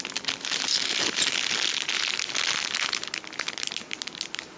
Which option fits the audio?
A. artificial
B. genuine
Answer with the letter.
B